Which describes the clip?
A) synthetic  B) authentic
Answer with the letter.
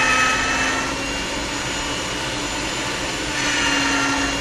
B